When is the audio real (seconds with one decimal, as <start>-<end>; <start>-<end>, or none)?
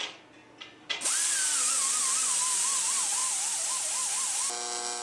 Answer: 0.0-5.0